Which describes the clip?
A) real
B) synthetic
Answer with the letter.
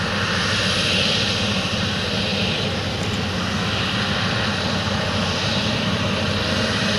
A